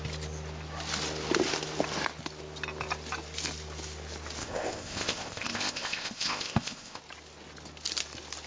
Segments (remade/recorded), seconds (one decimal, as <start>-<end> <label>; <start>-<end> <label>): 0.0-4.4 recorded; 4.4-7.0 remade; 7.0-8.5 recorded